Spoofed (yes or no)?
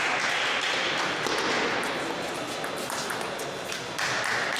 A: no